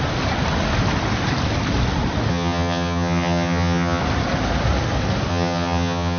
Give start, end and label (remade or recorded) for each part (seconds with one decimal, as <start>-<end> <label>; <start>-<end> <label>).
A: 0.0-2.3 recorded; 2.3-4.0 remade; 4.0-5.3 recorded; 5.3-6.2 remade